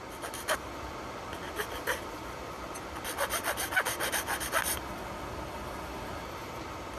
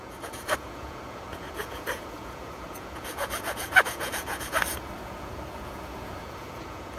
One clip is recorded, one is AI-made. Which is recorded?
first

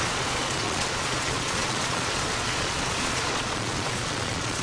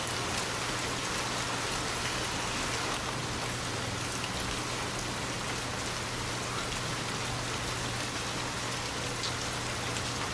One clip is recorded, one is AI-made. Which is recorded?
second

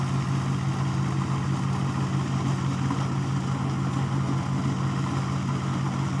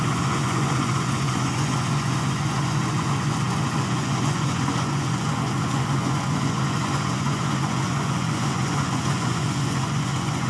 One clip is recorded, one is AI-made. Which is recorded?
first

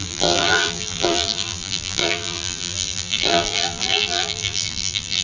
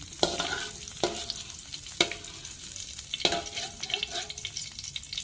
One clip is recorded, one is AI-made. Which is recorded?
second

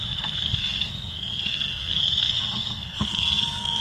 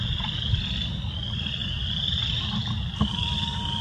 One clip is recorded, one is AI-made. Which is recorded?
second